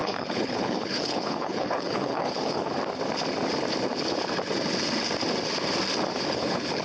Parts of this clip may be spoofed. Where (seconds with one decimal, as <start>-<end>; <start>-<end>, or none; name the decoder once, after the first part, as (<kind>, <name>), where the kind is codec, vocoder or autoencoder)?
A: 0.0-2.7 (codec, HILCodec); 6.3-6.8

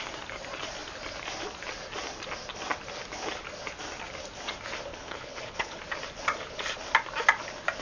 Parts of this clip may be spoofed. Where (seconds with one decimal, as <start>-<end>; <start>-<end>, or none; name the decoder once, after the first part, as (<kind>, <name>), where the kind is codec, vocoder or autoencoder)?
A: 4.9-5.8 (codec, HILCodec)

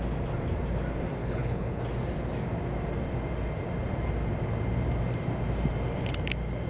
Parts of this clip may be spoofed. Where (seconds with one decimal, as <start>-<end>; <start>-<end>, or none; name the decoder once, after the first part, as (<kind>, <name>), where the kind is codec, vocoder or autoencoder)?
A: 1.2-1.8 (codec, HILCodec)

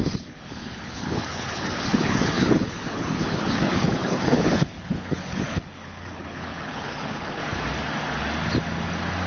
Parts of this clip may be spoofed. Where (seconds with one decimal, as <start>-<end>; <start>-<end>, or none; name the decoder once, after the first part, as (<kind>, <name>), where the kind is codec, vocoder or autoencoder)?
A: 0.0-7.4 (codec, HILCodec)

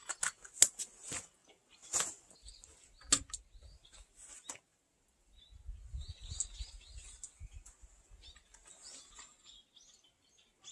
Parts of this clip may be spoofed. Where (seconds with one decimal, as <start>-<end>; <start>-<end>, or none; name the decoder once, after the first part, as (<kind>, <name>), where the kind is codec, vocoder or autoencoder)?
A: none

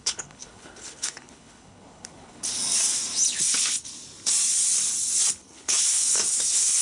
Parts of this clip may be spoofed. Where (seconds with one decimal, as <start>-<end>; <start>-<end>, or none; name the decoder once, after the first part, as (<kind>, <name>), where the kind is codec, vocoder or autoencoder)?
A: 0.0-2.6 (codec, HILCodec); 3.3-3.9; 5.4-6.8